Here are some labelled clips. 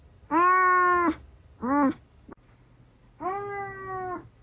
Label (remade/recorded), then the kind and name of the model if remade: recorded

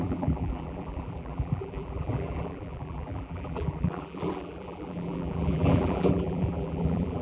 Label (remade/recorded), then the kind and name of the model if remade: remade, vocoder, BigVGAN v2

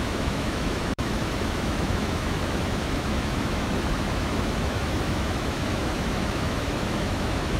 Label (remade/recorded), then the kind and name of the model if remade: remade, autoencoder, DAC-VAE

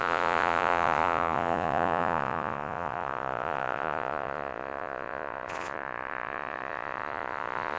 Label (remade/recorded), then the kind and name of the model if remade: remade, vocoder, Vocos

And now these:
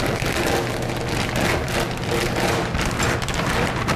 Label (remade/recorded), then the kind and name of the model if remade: recorded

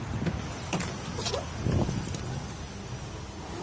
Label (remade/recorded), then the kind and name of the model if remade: recorded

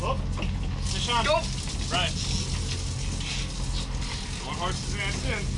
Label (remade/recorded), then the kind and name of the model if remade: recorded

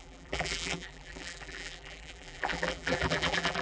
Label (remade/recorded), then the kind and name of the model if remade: remade, vocoder, BigVGAN v2